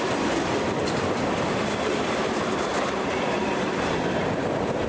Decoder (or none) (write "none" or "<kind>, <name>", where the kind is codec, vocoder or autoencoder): none